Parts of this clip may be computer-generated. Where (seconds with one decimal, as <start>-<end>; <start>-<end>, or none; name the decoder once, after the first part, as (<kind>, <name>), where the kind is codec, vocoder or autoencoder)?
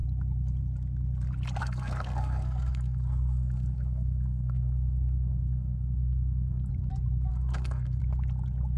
1.6-6.7 (codec, SNAC); 7.3-8.0